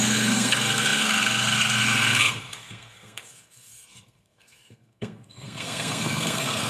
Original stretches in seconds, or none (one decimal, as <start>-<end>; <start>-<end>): none